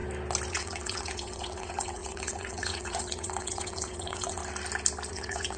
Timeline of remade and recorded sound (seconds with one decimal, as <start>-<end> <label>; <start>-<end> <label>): 0.0-0.5 recorded; 0.5-4.4 remade; 4.4-5.1 recorded; 5.1-5.6 remade